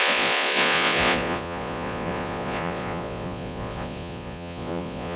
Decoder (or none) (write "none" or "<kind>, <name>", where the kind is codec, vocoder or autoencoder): vocoder, Vocos